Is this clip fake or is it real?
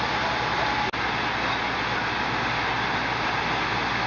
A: real